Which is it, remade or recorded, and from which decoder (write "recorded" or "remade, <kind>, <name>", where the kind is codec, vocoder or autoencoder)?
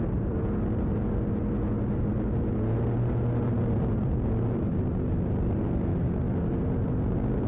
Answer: recorded